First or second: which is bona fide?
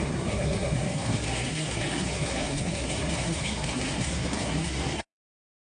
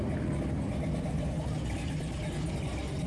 second